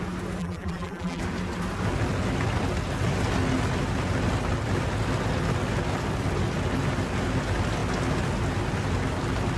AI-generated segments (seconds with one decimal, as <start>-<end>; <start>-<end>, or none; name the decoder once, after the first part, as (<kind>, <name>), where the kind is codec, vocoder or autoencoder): 0.4-1.2 (vocoder, BigVGAN v2)